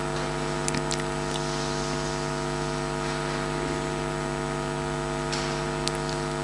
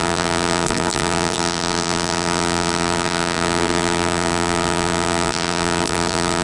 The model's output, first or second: second